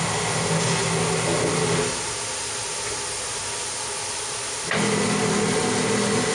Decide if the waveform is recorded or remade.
recorded